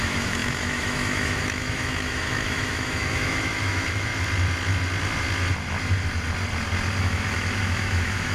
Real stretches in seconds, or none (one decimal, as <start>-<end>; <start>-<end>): 4.1-7.0